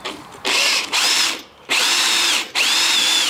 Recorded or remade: remade